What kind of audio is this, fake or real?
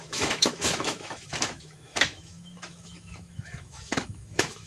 fake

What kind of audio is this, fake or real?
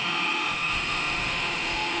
fake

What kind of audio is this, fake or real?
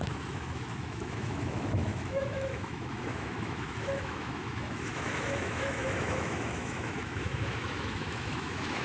fake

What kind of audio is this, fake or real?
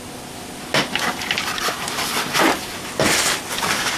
real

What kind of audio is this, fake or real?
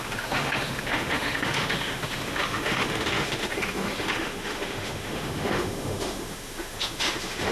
fake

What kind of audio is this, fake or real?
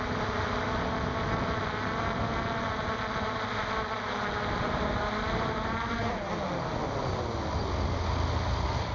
real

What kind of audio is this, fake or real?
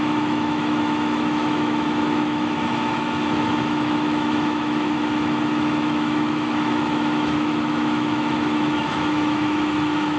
fake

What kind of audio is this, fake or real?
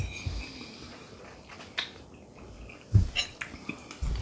real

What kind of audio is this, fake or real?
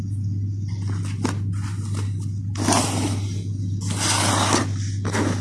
real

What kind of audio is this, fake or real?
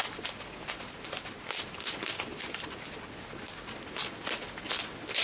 real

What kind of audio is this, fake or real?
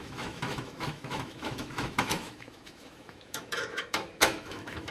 fake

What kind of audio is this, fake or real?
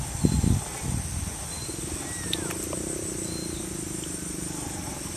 real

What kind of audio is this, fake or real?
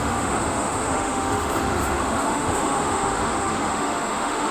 fake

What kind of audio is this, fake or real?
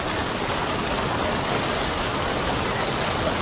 real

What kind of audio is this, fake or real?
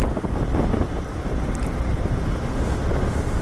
real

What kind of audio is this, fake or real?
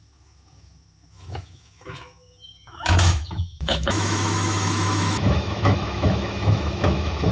fake